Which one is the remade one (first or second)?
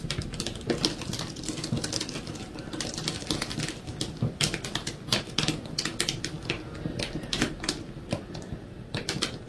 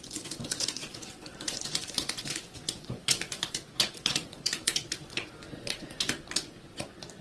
second